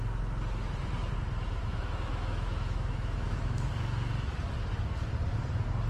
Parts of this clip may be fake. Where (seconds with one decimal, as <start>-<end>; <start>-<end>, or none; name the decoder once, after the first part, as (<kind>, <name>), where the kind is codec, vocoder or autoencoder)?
1.6-3.7 (autoencoder, DAC-VAE)